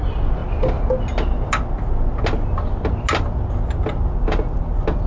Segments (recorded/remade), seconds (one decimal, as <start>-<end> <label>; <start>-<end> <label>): 0.0-5.1 recorded